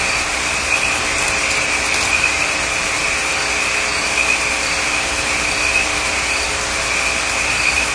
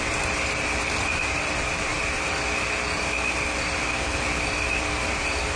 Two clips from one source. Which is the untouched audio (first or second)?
first